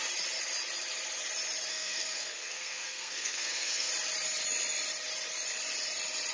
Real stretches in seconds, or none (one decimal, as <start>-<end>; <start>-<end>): 0.0-1.7; 3.9-6.3